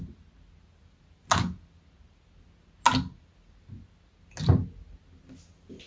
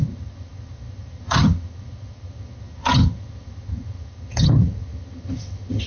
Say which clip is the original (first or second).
first